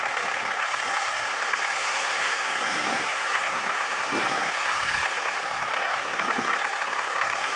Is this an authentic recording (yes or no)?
no